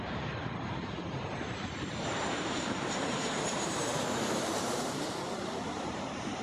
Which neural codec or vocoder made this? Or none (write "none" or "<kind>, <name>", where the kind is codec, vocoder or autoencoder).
vocoder, BigVGAN v2